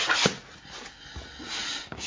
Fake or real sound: real